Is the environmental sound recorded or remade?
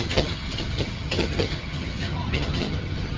remade